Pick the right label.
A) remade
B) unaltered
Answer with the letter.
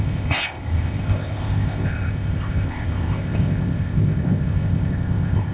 A